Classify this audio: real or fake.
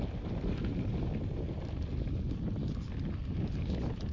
real